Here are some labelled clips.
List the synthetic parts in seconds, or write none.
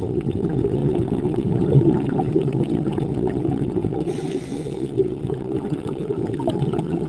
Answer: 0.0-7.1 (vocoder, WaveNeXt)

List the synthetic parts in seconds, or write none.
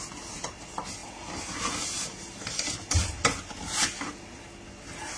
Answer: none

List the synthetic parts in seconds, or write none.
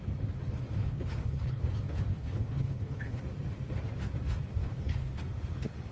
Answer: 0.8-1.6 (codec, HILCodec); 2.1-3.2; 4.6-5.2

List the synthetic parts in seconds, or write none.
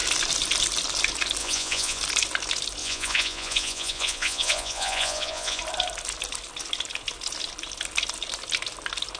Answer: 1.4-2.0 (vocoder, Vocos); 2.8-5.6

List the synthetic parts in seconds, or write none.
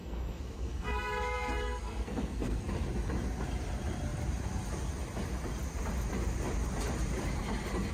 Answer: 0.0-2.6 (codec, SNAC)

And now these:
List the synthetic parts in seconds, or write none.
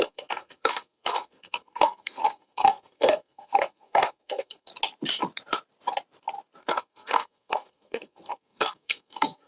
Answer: 0.0-4.7 (codec, SNAC); 6.6-9.5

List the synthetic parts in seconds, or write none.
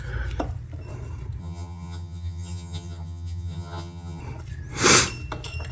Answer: 1.4-4.2 (vocoder, HiFi-GAN)